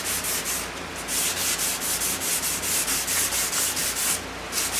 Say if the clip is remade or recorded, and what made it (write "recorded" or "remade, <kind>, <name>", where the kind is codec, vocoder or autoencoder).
recorded